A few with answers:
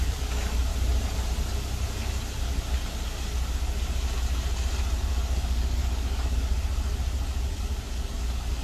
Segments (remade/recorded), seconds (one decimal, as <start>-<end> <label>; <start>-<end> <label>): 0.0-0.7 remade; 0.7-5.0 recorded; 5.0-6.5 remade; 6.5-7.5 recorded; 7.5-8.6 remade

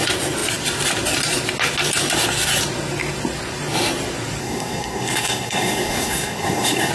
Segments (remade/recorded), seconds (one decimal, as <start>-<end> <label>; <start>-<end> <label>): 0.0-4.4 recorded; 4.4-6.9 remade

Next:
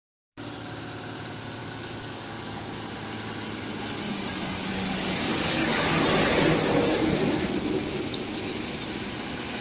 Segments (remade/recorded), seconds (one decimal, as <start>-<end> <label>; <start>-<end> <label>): 0.0-1.6 recorded; 1.6-2.9 remade; 2.9-4.7 recorded; 4.7-6.0 remade; 6.0-9.6 recorded